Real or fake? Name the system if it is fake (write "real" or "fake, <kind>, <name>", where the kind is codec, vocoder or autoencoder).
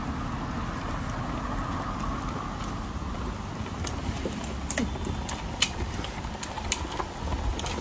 real